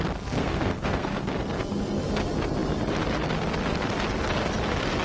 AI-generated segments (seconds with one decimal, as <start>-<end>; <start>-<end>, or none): 0.4-1.3